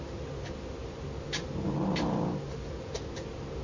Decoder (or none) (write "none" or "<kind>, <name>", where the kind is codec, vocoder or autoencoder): none